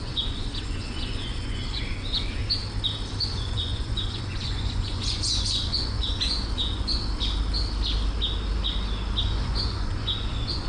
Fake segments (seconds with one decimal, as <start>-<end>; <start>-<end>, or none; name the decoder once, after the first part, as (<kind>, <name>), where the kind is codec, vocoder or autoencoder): 0.0-2.4 (vocoder, Vocos); 3.2-7.0; 9.2-10.7